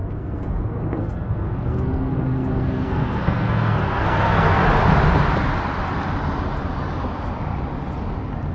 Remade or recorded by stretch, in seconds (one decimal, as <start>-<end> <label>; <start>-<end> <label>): 0.0-4.6 remade; 4.6-8.5 recorded